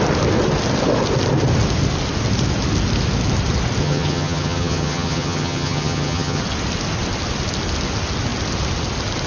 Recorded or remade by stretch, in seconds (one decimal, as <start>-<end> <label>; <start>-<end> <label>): 0.0-3.8 recorded; 3.8-6.4 remade; 6.4-9.3 recorded